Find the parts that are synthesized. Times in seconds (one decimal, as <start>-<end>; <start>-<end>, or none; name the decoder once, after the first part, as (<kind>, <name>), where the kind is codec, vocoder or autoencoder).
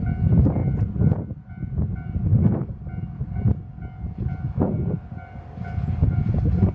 none